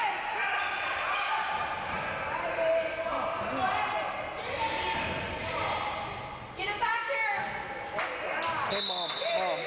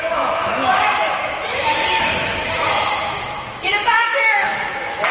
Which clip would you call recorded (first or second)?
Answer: first